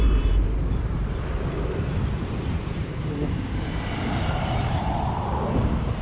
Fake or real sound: fake